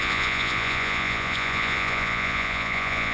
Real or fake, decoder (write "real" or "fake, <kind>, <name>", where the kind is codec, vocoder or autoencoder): fake, vocoder, Vocos